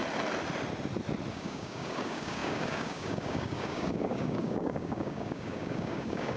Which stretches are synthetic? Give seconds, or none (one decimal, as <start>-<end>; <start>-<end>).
1.3-6.4